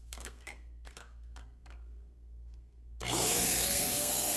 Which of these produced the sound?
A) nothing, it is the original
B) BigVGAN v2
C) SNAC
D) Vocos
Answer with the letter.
C